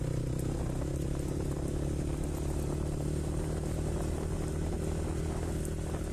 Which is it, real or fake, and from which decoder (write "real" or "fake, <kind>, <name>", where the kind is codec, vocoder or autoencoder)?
real